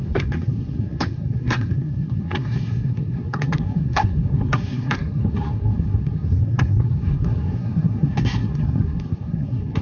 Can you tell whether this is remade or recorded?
remade